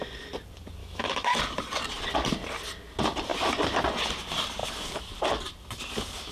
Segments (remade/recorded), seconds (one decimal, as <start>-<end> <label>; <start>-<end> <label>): 0.0-0.8 recorded; 0.8-1.4 remade; 1.4-6.3 recorded